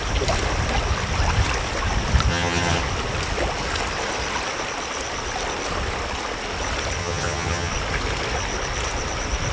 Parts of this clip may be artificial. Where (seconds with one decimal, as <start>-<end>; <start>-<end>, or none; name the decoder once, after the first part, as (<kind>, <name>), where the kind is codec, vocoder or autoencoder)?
2.3-2.8 (vocoder, HiFi-GAN); 7.0-7.7